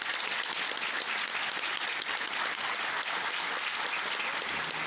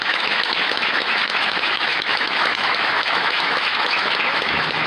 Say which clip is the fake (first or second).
second